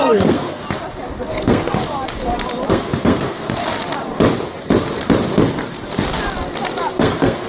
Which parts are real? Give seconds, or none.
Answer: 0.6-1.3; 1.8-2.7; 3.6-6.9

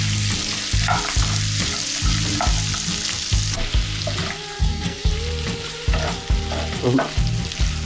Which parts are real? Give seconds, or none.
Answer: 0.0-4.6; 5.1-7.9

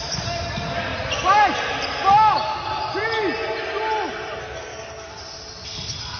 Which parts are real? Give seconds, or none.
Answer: 0.0-4.4; 5.1-6.2

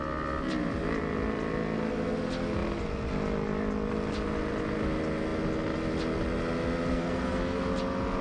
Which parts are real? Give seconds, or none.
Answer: 0.0-6.9; 7.6-8.2

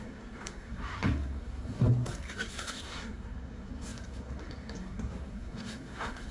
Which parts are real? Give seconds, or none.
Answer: none

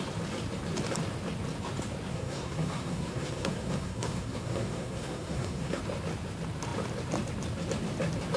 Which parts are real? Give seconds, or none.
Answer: 0.0-2.1; 5.8-8.4

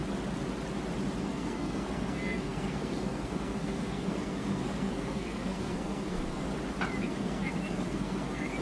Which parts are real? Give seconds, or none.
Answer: 0.0-1.2; 6.5-7.0